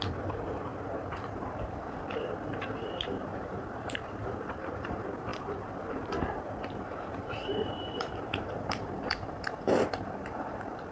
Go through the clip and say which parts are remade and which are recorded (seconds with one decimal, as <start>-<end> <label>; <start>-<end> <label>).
0.0-10.9 remade